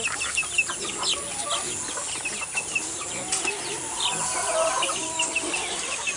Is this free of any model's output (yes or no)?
yes